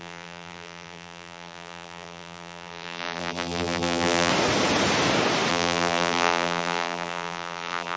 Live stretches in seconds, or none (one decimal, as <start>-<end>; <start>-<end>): 4.3-5.5